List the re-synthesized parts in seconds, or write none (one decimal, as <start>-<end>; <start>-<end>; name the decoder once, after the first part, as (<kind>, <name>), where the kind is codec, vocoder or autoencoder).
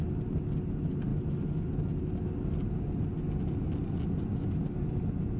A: none